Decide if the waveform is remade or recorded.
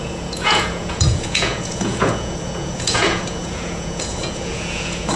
remade